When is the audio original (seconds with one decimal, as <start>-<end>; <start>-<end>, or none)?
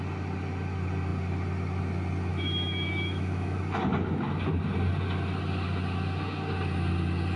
0.0-2.3; 3.6-7.4